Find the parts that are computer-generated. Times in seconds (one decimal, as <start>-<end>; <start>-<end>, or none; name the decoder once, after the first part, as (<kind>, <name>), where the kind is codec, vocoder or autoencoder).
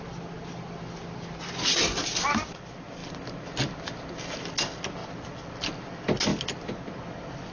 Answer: 0.4-1.5 (vocoder, BigVGAN v2); 5.0-5.5